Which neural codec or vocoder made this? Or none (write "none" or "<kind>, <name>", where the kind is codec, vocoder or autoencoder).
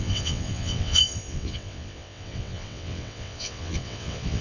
vocoder, WaveNeXt